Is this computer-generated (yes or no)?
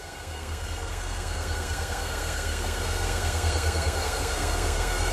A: yes